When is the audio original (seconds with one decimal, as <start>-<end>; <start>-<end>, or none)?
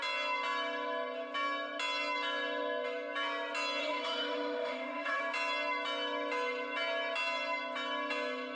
0.0-3.8; 5.2-8.6